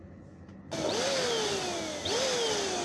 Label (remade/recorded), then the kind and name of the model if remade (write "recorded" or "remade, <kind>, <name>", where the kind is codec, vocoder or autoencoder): recorded